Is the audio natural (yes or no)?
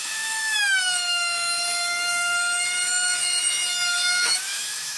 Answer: no